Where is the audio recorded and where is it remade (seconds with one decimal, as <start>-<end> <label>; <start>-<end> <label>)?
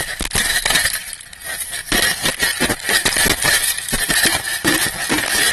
0.0-4.7 recorded; 4.7-5.5 remade